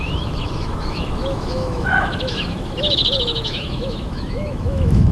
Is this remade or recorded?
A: remade